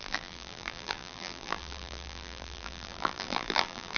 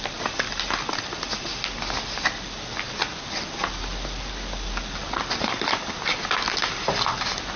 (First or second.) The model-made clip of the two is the first